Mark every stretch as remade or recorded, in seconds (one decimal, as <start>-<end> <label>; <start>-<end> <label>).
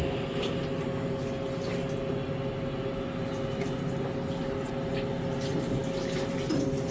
0.0-6.9 recorded